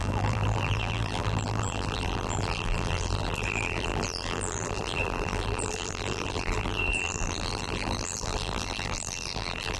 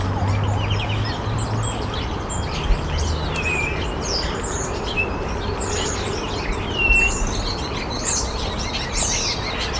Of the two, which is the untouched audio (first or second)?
second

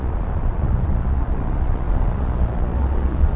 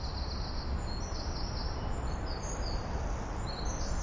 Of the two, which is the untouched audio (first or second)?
second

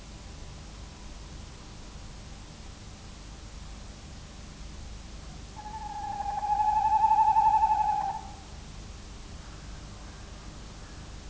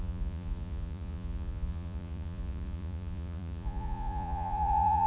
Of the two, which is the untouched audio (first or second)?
first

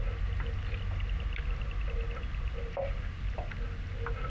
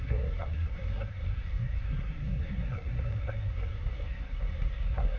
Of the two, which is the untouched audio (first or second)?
first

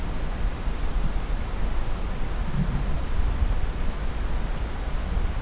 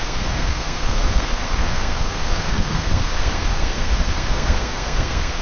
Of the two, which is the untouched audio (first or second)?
first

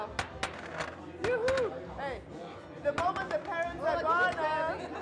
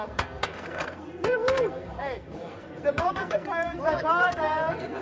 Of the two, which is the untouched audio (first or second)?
first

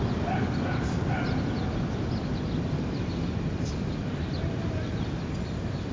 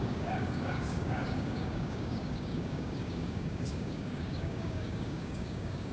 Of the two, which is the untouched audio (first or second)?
first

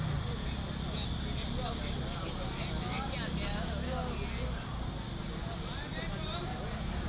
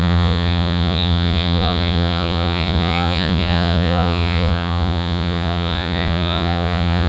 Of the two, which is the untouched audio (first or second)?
first